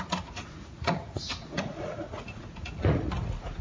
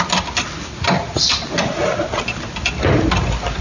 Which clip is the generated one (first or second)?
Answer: first